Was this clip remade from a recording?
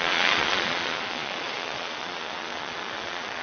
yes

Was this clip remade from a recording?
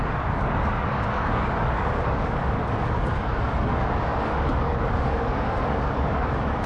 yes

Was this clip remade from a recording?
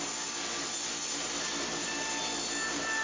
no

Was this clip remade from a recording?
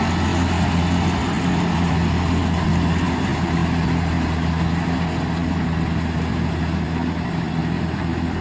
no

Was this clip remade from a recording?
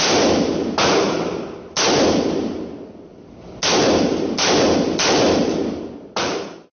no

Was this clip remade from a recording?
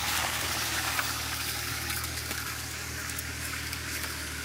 yes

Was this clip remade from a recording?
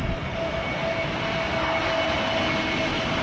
no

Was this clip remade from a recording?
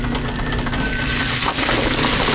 no